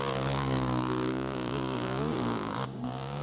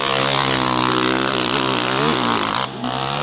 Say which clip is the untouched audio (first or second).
second